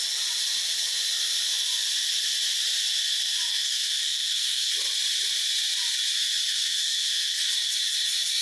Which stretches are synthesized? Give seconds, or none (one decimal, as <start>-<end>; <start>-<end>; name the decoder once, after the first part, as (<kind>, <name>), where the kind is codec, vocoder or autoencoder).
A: 3.5-4.7 (codec, SNAC); 6.5-7.5